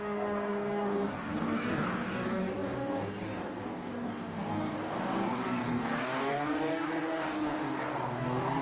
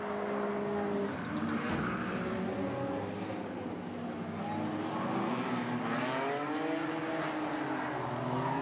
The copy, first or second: first